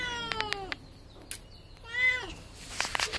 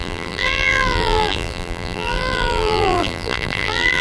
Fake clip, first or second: second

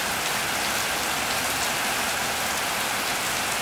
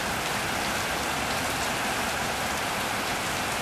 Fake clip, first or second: second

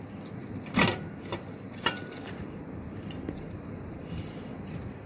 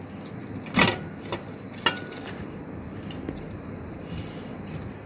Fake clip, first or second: first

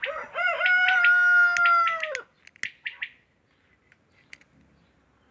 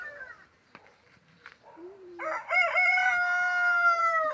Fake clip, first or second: second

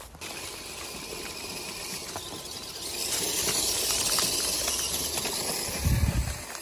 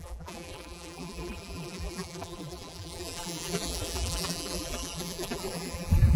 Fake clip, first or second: second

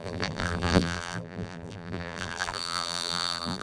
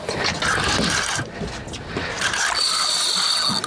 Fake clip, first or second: first